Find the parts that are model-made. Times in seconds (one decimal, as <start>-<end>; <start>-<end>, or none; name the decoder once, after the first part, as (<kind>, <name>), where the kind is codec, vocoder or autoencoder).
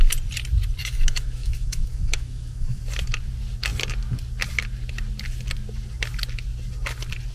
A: 0.8-2.8 (autoencoder, DAC-VAE)